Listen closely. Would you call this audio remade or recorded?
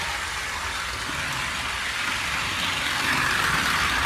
recorded